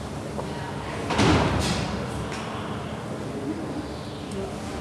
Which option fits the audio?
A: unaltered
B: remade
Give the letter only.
A